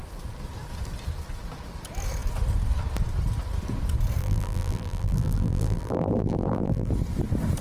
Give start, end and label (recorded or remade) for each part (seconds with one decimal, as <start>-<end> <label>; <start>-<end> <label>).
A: 0.0-4.2 recorded; 4.2-6.9 remade; 6.9-7.6 recorded